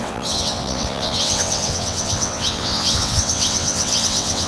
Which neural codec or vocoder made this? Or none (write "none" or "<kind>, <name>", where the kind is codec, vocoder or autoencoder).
vocoder, WaveNeXt